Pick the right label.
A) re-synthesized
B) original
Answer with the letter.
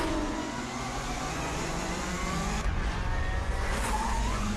A